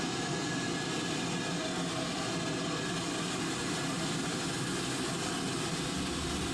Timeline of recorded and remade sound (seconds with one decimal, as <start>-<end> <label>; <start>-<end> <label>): 0.0-6.5 recorded